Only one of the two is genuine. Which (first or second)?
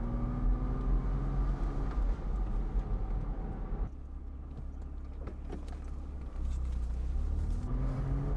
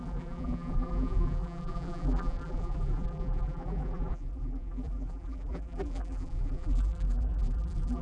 first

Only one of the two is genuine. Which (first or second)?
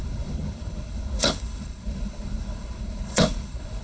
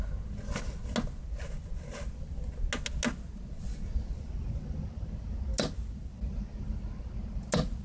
second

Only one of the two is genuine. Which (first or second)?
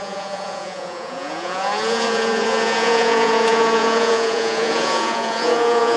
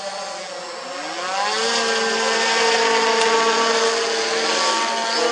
second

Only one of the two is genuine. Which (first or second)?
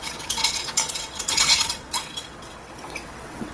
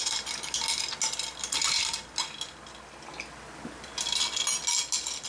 second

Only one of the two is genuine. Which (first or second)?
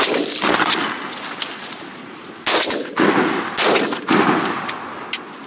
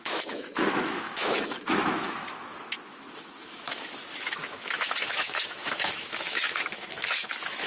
first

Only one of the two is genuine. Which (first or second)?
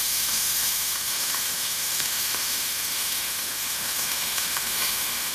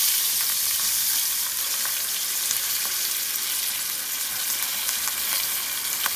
second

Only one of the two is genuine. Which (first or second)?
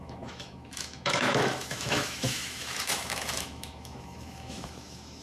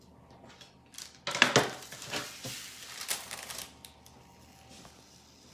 second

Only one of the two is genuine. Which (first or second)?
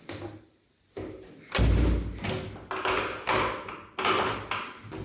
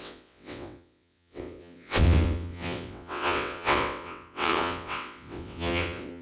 first